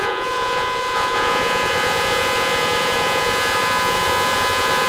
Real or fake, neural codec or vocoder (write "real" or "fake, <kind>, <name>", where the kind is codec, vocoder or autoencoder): fake, vocoder, Vocos